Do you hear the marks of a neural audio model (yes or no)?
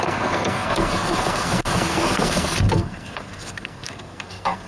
yes